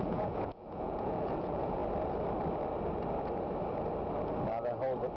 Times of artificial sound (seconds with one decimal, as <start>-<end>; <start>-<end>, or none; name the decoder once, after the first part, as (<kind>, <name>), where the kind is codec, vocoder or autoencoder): 0.0-1.8 (vocoder, Vocos)